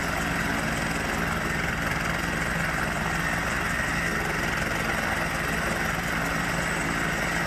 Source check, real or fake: real